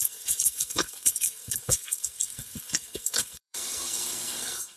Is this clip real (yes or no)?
no